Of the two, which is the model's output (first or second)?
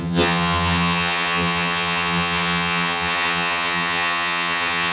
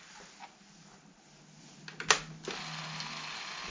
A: first